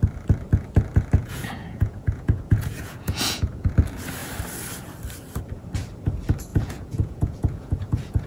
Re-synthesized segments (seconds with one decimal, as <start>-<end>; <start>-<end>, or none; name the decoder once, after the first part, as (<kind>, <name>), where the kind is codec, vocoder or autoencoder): 1.2-3.7 (vocoder, Vocos); 6.5-8.3